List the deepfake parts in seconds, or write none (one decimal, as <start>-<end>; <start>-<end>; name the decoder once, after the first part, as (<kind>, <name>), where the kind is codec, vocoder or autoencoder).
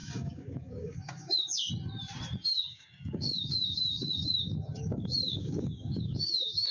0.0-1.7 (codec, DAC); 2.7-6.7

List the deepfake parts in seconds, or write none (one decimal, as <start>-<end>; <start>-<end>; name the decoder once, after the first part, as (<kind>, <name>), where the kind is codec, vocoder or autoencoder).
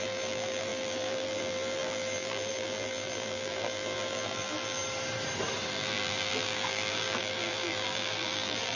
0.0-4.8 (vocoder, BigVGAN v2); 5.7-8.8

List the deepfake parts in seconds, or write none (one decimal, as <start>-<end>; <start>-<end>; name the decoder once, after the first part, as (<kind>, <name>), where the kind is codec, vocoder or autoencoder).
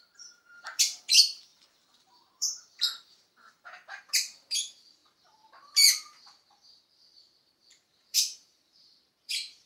0.0-9.7 (vocoder, BigVGAN v2)